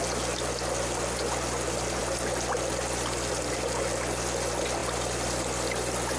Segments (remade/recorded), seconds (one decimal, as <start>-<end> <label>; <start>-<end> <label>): 0.0-4.8 recorded; 4.8-6.2 remade